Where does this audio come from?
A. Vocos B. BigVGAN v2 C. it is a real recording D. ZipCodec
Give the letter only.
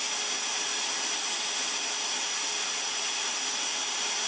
C